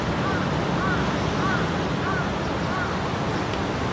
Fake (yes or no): no